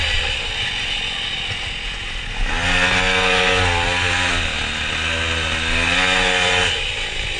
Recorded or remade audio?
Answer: recorded